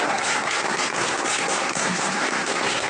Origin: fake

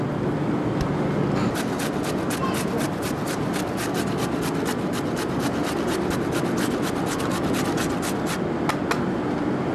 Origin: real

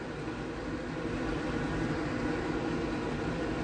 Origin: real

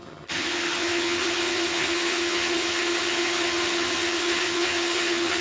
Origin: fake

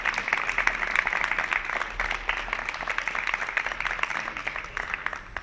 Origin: real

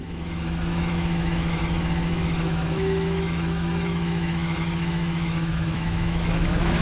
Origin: fake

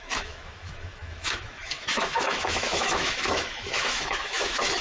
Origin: fake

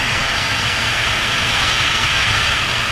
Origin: fake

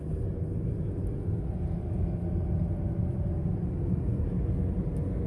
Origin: real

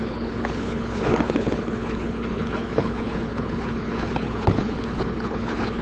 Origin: fake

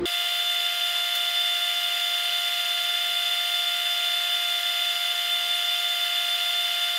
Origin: real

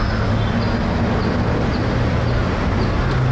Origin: real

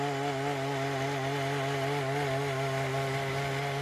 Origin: real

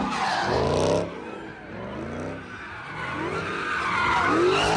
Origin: real